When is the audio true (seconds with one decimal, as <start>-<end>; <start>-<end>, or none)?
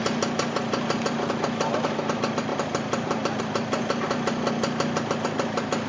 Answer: 0.0-5.9